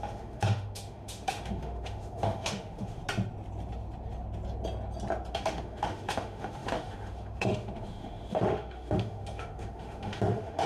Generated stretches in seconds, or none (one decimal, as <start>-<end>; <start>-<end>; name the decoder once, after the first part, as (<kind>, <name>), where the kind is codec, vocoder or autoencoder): 0.0-3.0 (autoencoder, DAC-VAE); 5.3-10.7